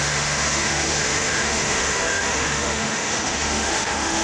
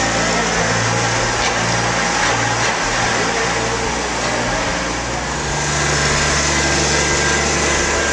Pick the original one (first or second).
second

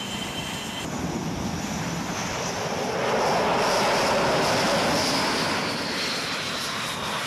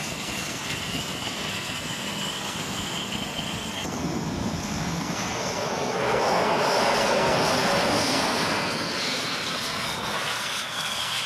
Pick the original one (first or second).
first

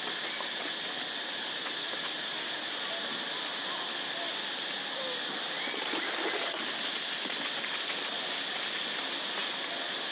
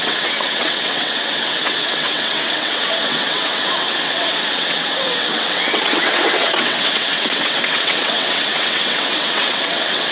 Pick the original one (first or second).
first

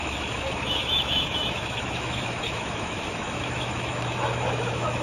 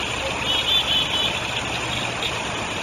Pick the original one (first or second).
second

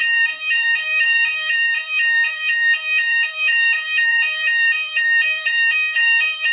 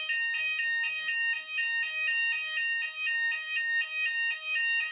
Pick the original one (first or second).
second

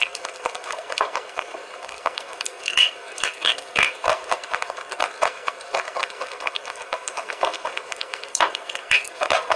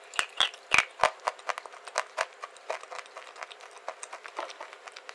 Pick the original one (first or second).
second